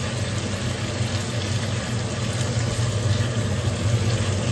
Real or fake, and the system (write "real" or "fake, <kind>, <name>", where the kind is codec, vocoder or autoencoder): real